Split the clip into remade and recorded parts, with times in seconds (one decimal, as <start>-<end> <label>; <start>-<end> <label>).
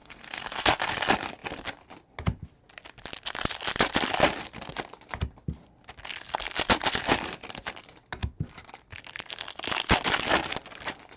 0.0-0.9 remade; 0.9-11.2 recorded